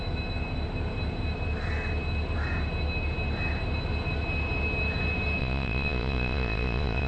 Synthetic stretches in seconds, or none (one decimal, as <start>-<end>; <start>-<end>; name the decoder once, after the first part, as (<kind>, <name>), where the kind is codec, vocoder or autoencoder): 5.4-7.1 (vocoder, Vocos)